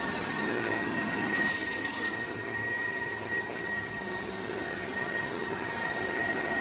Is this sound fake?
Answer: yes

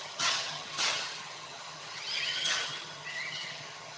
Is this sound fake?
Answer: yes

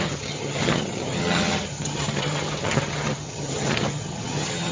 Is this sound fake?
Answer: yes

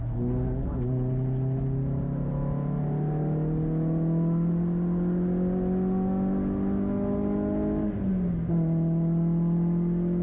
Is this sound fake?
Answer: no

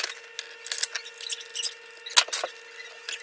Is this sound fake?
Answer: no